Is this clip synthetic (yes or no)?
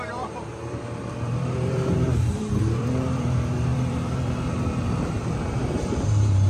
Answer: yes